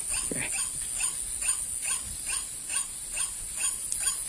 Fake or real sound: real